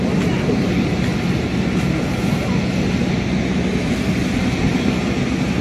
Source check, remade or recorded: recorded